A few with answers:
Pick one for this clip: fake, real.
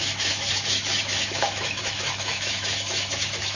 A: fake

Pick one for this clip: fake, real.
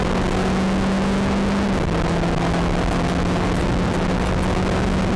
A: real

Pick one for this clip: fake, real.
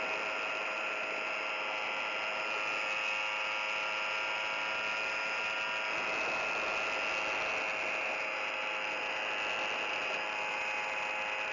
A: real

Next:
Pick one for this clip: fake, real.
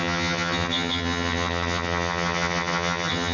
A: fake